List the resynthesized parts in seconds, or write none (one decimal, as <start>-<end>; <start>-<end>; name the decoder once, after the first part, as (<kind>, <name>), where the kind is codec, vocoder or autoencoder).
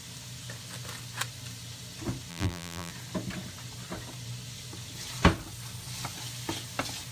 2.3-2.9 (vocoder, BigVGAN v2)